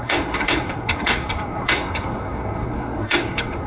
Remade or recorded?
remade